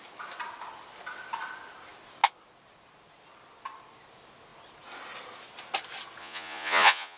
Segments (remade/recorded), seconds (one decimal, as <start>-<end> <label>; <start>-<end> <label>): 0.0-6.2 recorded; 6.2-7.2 remade